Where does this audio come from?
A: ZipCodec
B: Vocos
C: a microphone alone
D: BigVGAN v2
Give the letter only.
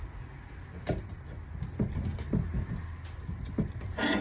C